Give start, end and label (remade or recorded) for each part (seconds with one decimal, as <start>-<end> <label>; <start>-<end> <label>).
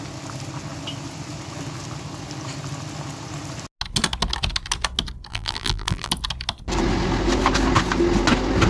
0.0-5.3 recorded; 5.3-6.1 remade; 6.1-8.7 recorded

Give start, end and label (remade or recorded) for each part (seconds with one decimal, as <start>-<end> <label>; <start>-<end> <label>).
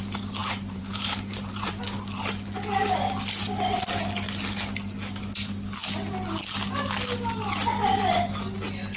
0.0-0.4 recorded; 0.4-1.8 remade; 1.8-9.0 recorded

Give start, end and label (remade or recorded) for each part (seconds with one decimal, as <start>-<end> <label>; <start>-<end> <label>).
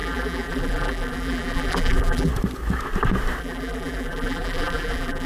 0.0-2.3 remade; 2.3-3.4 recorded; 3.4-5.3 remade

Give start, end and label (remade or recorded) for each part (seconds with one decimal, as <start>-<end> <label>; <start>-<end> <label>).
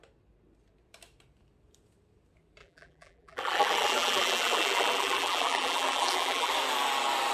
0.0-2.6 recorded; 2.6-6.5 remade; 6.5-7.3 recorded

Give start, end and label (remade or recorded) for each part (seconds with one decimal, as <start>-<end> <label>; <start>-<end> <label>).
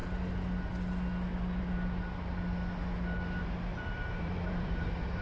0.0-3.7 recorded; 3.7-5.2 remade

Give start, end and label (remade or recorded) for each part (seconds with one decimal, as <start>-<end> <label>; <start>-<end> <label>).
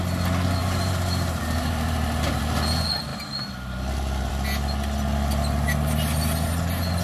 0.0-0.6 recorded; 0.6-2.4 remade; 2.4-7.0 recorded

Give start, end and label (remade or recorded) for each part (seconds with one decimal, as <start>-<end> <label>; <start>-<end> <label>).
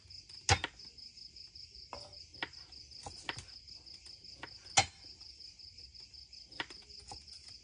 0.0-7.6 recorded